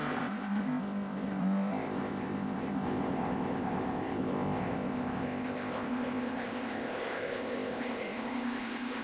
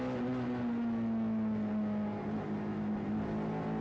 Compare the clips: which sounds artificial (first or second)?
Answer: first